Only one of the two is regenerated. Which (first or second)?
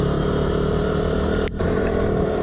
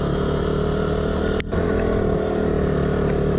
first